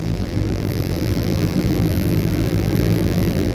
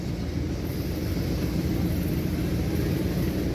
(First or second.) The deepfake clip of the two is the first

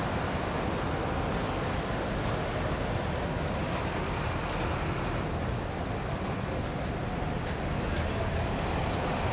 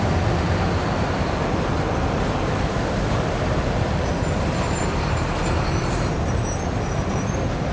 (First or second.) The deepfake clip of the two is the second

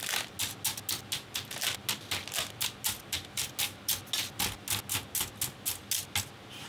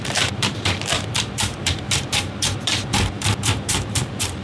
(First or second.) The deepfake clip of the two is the second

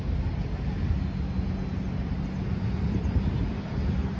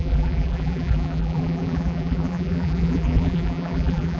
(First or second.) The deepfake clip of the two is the second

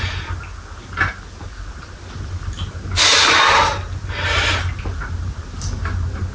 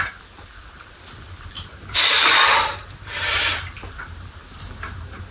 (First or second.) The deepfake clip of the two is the second